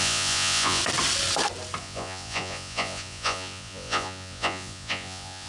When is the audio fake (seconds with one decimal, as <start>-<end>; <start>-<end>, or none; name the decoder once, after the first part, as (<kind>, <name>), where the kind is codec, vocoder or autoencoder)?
0.0-0.8 (vocoder, Vocos); 1.8-5.5